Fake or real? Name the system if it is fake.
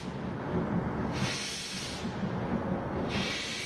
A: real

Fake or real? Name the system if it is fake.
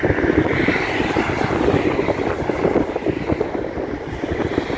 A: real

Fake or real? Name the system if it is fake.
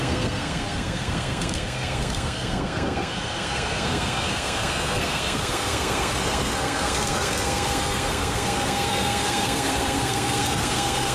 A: fake, codec, SNAC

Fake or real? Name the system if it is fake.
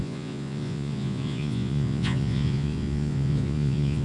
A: fake, vocoder, Vocos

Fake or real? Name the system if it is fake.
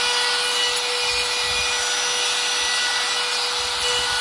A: real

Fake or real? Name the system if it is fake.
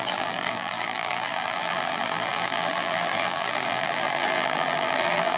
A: fake, vocoder, BigVGAN v2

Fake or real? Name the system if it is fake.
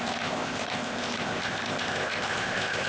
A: fake, codec, ZipCodec